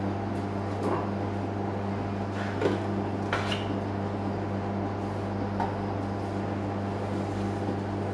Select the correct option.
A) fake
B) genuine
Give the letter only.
B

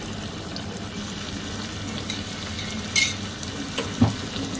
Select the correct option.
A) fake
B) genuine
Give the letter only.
B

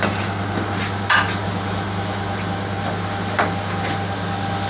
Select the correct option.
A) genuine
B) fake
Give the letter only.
A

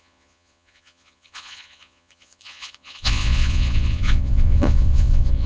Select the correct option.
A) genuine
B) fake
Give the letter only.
B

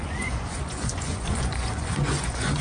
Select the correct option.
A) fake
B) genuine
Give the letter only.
A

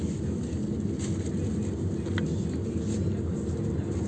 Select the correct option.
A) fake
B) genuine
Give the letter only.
B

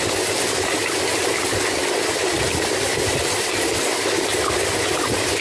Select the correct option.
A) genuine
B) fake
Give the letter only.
A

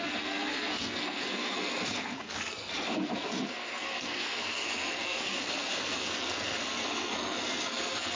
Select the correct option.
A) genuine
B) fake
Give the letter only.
B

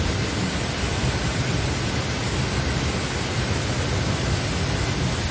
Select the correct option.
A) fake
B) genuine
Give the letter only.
B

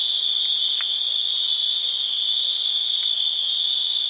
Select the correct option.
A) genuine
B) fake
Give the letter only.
A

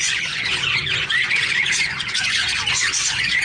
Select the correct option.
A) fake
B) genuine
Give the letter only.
A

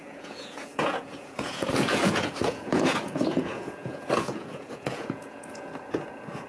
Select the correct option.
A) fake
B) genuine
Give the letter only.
A